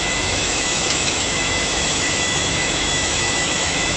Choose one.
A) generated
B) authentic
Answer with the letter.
A